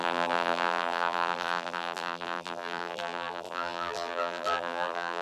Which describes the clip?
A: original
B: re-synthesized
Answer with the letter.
B